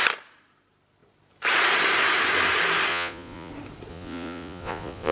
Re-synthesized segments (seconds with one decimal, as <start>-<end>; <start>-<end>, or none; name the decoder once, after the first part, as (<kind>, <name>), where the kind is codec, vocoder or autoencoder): 2.9-3.5 (vocoder, Vocos); 3.9-5.1